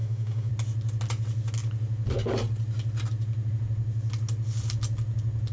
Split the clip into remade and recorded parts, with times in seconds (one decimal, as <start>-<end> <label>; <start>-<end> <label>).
0.0-0.5 remade; 0.5-5.5 recorded